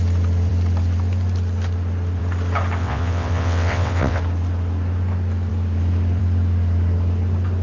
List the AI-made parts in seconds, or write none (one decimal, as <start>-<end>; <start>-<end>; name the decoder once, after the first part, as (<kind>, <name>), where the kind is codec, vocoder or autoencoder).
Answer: 2.8-4.2 (vocoder, WaveNeXt)

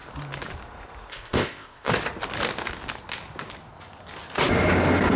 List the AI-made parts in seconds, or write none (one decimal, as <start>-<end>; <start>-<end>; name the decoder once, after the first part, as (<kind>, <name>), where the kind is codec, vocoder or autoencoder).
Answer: 1.1-1.9 (codec, ZipCodec)

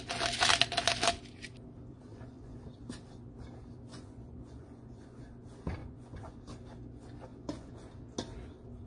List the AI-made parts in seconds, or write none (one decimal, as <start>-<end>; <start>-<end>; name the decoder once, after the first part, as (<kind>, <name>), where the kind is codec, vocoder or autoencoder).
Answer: 1.9-2.6 (vocoder, Vocos); 3.9-5.2; 5.8-6.4; 7.3-7.9

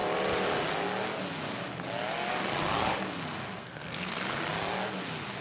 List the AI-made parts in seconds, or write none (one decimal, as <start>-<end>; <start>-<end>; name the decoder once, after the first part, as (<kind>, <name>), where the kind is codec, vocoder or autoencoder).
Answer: 3.6-4.1 (codec, SNAC)

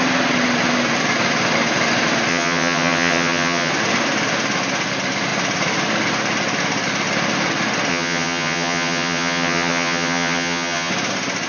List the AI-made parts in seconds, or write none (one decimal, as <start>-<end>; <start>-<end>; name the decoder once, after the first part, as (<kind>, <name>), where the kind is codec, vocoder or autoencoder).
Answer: 2.3-3.7 (vocoder, HiFi-GAN); 7.9-10.9

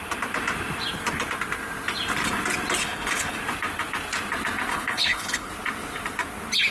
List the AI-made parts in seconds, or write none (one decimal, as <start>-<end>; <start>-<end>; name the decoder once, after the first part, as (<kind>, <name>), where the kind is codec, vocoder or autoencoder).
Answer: 2.8-3.4 (codec, HILCodec); 4.7-5.5

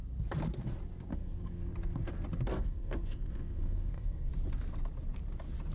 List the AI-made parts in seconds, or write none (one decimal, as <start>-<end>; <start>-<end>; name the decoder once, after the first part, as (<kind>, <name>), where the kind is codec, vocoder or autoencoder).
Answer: 1.1-1.7 (codec, SNAC); 2.5-4.3

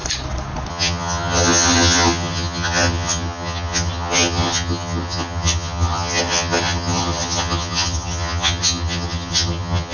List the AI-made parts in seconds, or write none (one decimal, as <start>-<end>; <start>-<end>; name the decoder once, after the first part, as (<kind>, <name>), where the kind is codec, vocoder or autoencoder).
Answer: 0.7-9.9 (vocoder, HiFi-GAN)